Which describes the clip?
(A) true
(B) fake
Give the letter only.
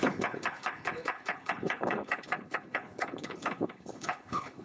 B